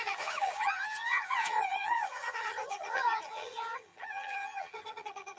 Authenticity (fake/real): fake